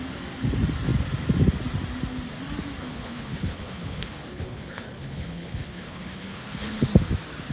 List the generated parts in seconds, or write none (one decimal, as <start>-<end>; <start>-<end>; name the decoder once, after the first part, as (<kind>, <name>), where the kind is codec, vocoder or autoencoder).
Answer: 2.8-6.8 (codec, HILCodec)